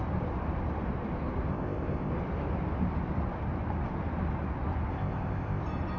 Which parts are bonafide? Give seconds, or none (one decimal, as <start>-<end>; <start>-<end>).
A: 0.0-1.5; 2.1-4.9; 5.6-6.0